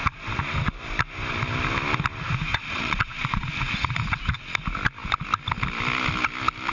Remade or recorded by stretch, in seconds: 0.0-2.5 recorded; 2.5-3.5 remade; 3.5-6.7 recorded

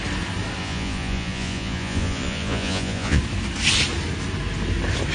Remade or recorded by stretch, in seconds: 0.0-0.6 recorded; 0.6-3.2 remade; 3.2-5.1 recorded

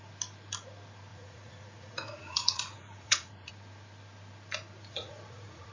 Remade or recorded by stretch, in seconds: 0.0-1.1 recorded; 1.1-3.5 remade; 3.5-4.8 recorded; 4.8-5.7 remade

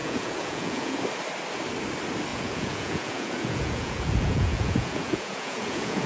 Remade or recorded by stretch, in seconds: 0.0-1.0 remade; 1.0-2.3 recorded; 2.3-6.1 remade

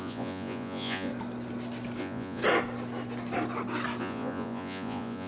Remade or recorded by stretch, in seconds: 0.0-1.1 remade; 1.1-2.0 recorded; 2.0-2.4 remade; 2.4-4.0 recorded; 4.0-5.3 remade

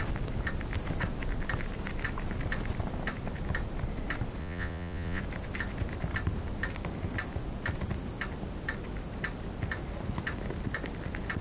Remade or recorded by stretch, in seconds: 0.0-4.4 recorded; 4.4-5.2 remade; 5.2-11.4 recorded

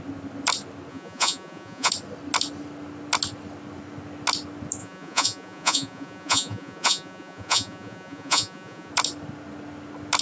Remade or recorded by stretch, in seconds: 0.0-0.9 recorded; 0.9-1.9 remade; 1.9-4.8 recorded; 4.8-8.9 remade; 8.9-10.2 recorded